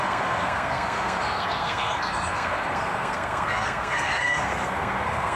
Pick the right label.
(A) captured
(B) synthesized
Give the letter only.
B